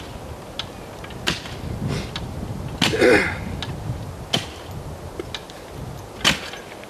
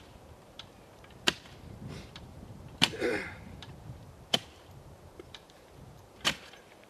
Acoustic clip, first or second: first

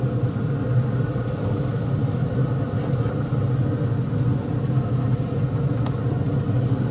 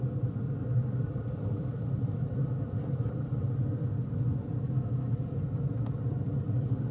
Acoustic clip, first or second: first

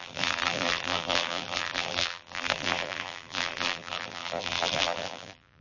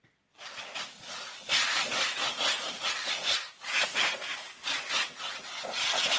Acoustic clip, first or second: second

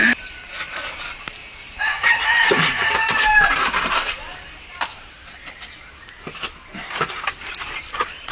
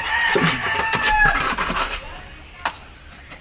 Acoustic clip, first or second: second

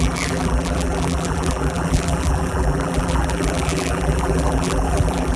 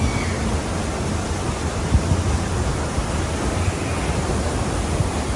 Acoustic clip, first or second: second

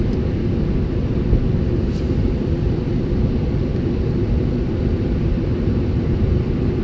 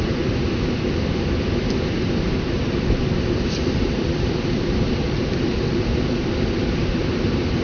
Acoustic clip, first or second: first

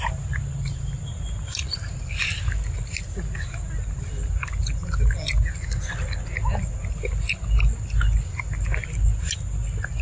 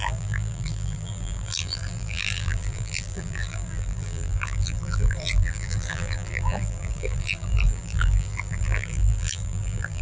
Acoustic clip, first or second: first